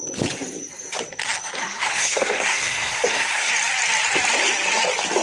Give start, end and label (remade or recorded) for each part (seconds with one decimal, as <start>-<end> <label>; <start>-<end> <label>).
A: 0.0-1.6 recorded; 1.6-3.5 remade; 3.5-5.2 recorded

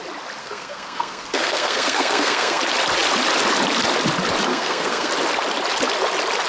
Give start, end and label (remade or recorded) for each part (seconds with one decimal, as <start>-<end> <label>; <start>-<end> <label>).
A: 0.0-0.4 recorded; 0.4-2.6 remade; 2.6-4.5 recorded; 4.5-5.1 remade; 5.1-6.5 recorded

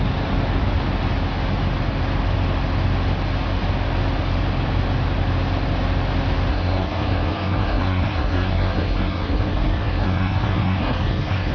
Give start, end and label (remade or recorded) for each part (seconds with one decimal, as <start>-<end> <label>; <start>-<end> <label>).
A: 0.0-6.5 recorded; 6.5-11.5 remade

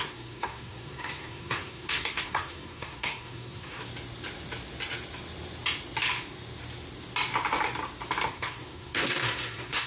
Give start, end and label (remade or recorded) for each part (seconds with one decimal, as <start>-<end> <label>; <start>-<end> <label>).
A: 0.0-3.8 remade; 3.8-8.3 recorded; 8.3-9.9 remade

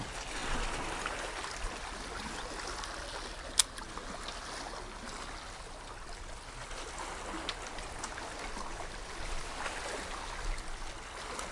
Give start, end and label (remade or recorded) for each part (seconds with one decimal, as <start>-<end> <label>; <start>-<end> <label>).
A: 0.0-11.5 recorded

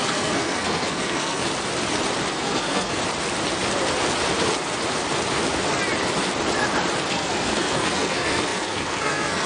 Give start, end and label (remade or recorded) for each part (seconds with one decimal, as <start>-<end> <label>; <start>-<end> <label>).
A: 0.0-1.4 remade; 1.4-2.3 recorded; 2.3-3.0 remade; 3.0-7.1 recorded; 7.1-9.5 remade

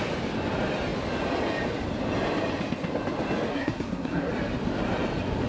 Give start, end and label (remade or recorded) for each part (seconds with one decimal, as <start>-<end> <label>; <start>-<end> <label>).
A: 0.0-3.5 recorded; 3.5-4.3 remade; 4.3-5.5 recorded